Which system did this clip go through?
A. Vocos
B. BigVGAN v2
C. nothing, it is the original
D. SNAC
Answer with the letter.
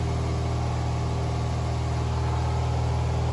C